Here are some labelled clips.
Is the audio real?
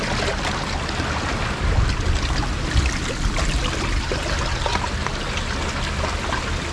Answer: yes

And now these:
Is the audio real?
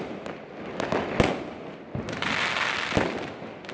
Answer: yes